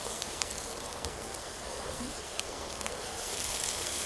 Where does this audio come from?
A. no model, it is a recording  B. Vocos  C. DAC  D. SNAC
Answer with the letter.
D